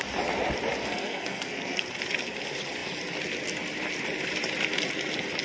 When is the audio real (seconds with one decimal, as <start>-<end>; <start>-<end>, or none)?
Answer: 0.0-0.8; 1.8-5.4